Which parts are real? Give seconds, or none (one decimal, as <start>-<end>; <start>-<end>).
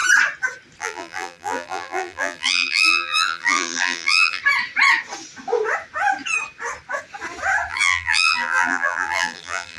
0.0-0.8; 4.4-7.7